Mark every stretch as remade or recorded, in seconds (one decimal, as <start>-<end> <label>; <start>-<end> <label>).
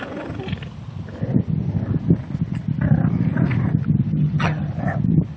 0.0-4.1 recorded; 4.1-4.7 remade; 4.7-5.4 recorded